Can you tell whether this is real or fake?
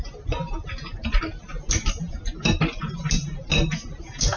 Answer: real